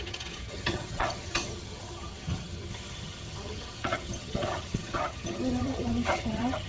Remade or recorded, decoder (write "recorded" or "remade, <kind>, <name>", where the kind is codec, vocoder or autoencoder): remade, vocoder, HiFi-GAN